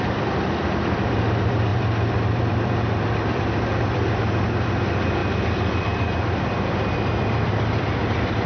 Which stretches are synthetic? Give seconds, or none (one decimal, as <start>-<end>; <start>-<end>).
0.0-8.5